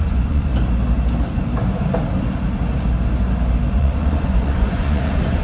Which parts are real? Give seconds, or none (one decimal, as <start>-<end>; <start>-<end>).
0.5-3.7

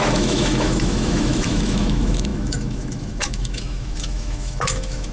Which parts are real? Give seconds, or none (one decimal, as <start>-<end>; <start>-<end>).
none